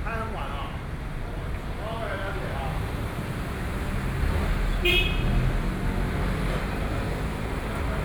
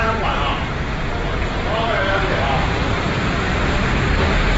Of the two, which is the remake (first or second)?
second